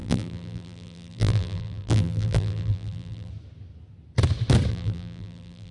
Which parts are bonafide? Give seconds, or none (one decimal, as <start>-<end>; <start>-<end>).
3.3-4.7

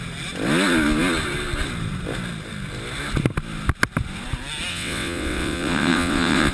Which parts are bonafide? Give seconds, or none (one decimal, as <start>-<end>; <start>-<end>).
0.0-4.7

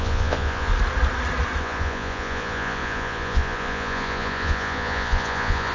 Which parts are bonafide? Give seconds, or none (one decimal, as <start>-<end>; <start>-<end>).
0.7-1.6

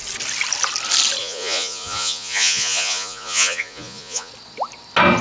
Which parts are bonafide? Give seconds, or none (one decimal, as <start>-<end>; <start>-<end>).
0.0-1.2; 4.3-5.2

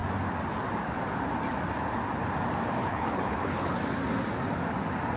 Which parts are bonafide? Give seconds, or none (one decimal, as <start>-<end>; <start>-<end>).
0.0-2.8; 3.8-5.2